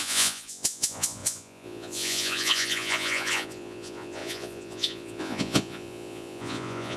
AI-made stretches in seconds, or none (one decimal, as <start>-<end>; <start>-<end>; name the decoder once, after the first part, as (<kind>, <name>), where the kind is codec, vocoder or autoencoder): 0.0-7.0 (vocoder, Vocos)